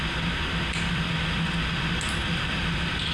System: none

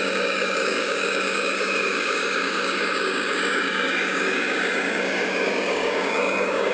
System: codec, DAC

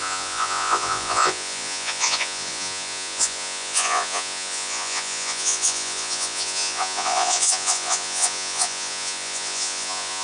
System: vocoder, Vocos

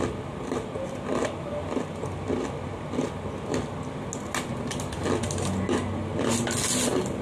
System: none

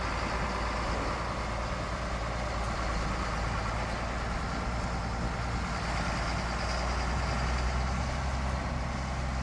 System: none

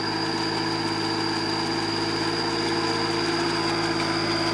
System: none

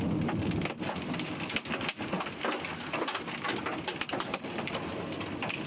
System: none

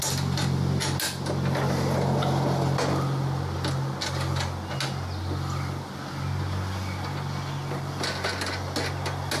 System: none